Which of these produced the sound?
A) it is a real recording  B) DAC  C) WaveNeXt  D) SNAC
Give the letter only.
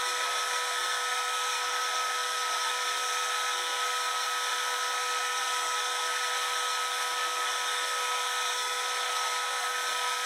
D